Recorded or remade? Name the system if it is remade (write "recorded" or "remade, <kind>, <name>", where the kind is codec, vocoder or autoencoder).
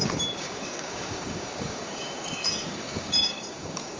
remade, codec, DAC